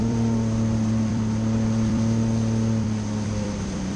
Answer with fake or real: fake